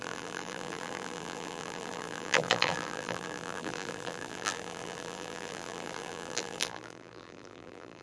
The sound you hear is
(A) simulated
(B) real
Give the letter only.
A